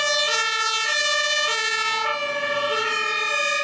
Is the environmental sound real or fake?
real